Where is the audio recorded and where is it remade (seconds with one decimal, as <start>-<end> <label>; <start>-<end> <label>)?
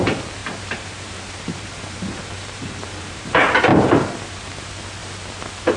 0.0-0.4 recorded; 0.4-3.3 remade; 3.3-3.7 recorded; 3.7-4.6 remade; 4.6-5.8 recorded